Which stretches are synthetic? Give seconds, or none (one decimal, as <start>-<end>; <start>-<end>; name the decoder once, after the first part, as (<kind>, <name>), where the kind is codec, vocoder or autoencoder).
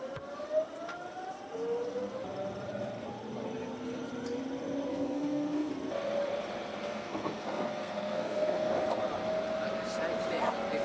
4.9-5.7 (codec, SNAC); 6.8-8.8